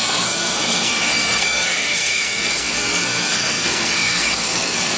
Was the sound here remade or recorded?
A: remade